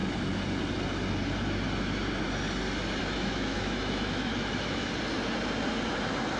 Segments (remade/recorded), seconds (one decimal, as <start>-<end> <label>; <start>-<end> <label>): 0.0-3.0 recorded; 3.0-4.9 remade; 4.9-6.4 recorded